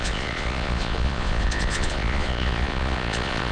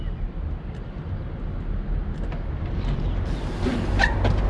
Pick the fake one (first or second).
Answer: first